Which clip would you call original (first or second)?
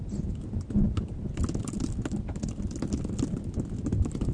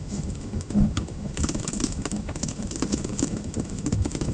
first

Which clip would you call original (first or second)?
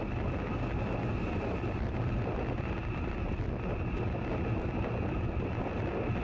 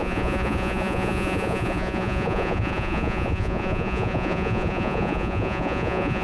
first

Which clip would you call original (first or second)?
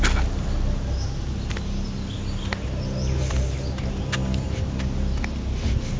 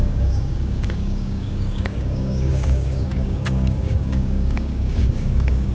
first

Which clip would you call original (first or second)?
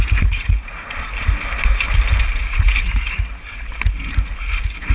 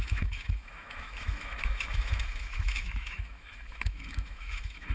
first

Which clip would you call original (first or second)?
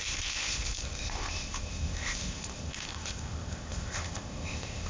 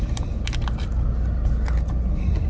second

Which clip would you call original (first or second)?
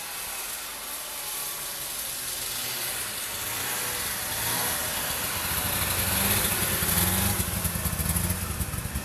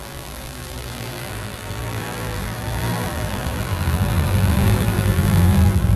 first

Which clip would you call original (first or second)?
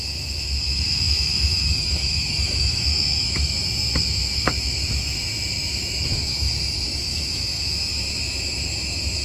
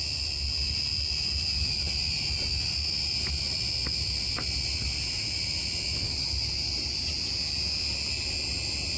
second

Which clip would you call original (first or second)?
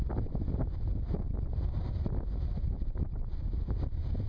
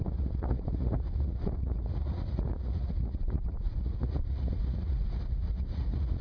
first